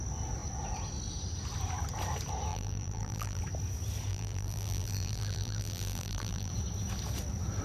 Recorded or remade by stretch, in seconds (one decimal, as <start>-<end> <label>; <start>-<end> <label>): 0.0-2.5 recorded; 2.5-3.4 remade; 3.4-4.1 recorded; 4.1-6.5 remade; 6.5-7.6 recorded